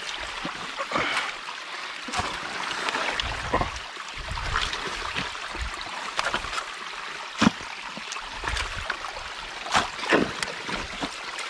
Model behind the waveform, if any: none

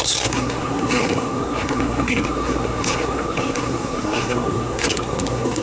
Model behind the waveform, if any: codec, SNAC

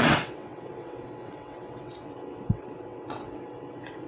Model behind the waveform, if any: vocoder, WaveNeXt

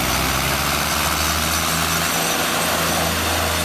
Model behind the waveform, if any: none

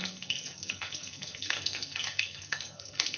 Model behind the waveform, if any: codec, SNAC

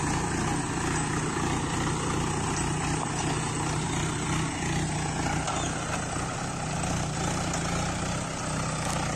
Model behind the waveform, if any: none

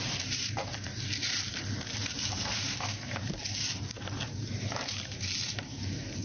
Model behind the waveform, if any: vocoder, BigVGAN v2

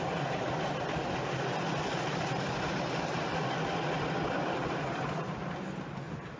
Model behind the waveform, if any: none